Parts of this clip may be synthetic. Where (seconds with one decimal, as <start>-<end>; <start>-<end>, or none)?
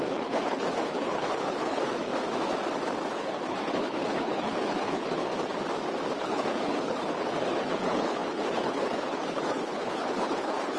0.0-2.1; 3.1-5.2; 6.2-10.8